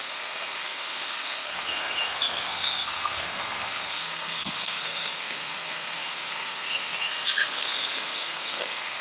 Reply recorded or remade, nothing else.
remade